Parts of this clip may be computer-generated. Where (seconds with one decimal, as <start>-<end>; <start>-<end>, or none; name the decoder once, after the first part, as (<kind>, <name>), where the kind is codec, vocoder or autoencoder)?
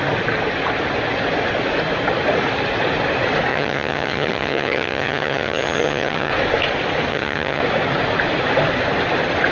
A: 3.5-6.3 (vocoder, HiFi-GAN); 7.1-7.6